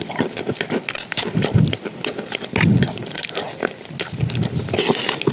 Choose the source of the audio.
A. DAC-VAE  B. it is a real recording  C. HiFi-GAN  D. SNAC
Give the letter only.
B